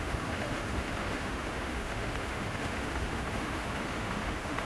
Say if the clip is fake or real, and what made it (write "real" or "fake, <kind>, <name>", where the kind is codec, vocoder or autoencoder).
fake, autoencoder, DAC-VAE